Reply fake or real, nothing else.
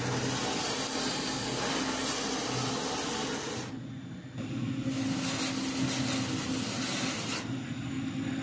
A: real